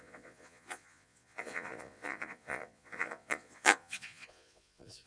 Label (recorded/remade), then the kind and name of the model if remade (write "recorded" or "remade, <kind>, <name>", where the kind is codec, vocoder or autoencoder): remade, vocoder, Vocos